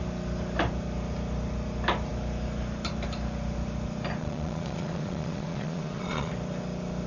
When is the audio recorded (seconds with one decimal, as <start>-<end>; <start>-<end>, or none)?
0.0-4.2; 6.3-7.1